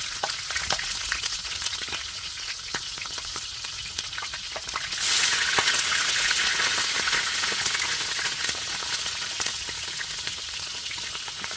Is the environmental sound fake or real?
fake